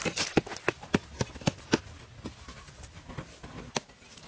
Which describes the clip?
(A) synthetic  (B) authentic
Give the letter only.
B